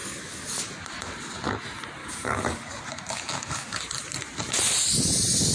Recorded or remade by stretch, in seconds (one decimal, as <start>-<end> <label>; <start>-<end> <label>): 0.0-0.6 remade; 0.6-2.0 recorded; 2.0-3.8 remade; 3.8-5.5 recorded

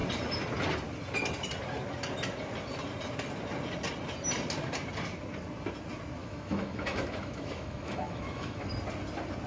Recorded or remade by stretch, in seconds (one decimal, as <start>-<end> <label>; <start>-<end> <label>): 0.0-6.2 recorded; 6.2-8.7 remade; 8.7-9.5 recorded

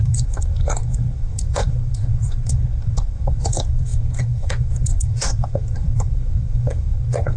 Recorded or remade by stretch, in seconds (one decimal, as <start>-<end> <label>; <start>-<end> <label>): 0.0-7.4 remade